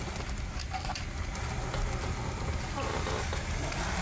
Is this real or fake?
real